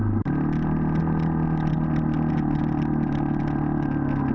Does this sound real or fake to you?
real